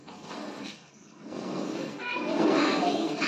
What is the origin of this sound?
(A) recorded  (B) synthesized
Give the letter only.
B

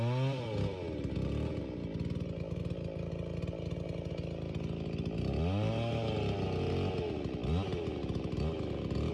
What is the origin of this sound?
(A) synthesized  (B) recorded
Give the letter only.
B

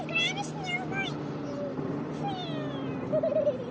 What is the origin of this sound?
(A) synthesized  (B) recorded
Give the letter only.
B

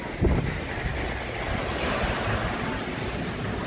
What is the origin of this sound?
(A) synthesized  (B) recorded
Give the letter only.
B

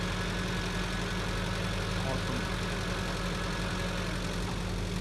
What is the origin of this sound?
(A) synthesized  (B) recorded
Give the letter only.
B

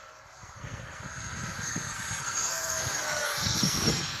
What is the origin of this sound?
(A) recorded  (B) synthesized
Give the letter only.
B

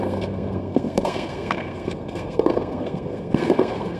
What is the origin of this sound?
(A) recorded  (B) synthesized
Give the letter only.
B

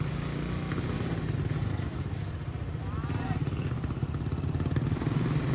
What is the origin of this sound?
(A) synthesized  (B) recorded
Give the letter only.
B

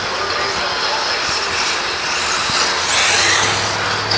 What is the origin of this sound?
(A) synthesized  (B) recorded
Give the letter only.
B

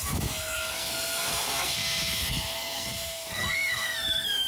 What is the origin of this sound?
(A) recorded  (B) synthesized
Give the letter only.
B